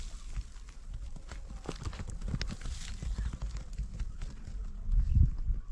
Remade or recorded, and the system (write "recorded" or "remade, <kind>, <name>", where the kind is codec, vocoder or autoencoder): recorded